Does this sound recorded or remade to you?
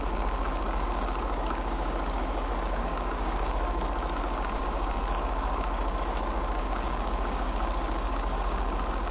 remade